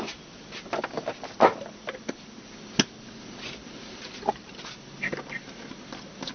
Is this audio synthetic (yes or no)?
no